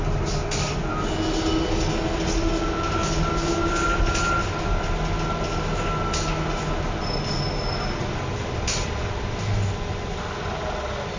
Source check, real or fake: real